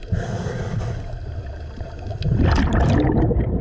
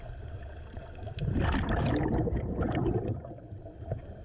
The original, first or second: first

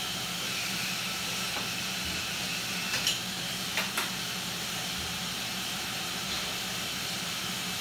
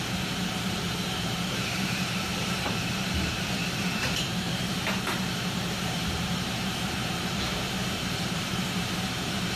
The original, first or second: first